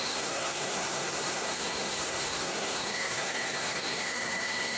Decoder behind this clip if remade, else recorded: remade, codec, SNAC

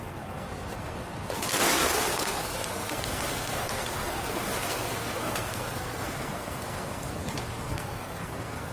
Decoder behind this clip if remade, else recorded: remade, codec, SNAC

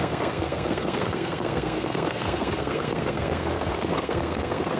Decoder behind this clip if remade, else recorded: remade, codec, SNAC